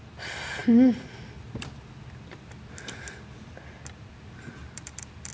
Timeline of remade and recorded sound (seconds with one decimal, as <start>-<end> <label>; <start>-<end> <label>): 0.0-4.6 recorded; 4.6-5.3 remade